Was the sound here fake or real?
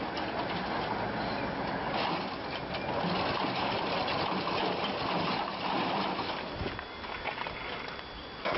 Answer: real